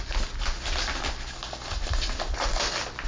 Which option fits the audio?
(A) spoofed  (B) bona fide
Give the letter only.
B